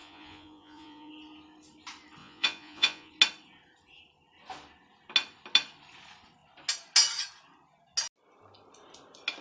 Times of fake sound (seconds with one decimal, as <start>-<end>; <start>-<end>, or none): 0.0-1.1; 2.2-3.1